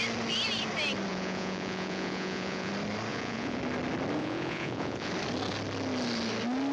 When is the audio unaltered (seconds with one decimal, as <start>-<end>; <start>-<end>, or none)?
0.0-1.1; 2.7-3.1; 3.6-4.2; 5.1-6.7